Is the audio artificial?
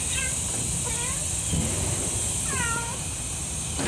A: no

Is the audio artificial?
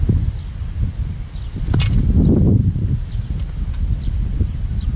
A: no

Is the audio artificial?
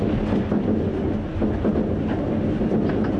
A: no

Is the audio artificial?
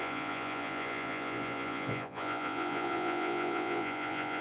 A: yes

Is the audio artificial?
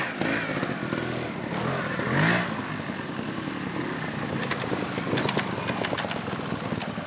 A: no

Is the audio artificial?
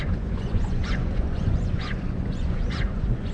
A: yes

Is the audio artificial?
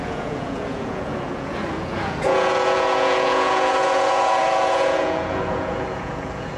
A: yes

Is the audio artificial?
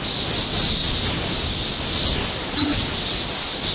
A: no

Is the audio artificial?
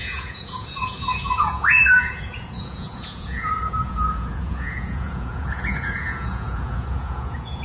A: yes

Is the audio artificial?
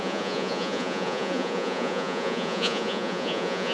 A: yes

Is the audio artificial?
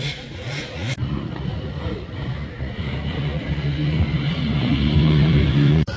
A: yes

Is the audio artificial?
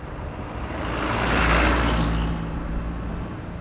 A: no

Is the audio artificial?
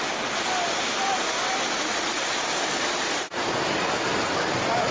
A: no